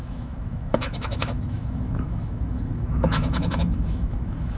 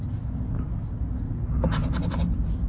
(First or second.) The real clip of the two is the second